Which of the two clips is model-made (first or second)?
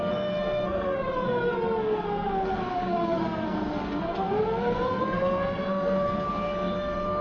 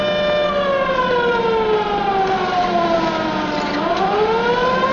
first